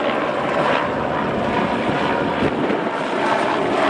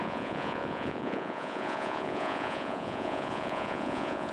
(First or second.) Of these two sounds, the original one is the first